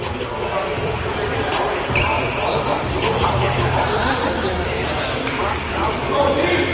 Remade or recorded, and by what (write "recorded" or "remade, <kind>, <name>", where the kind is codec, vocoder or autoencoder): remade, vocoder, BigVGAN v2